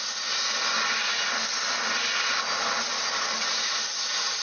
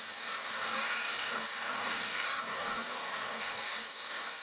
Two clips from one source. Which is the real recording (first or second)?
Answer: first